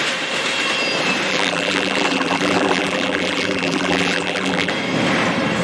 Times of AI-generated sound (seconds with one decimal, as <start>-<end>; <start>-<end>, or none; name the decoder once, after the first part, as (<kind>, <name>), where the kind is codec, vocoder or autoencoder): 1.3-4.7 (vocoder, BigVGAN v2)